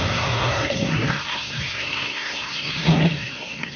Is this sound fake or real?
fake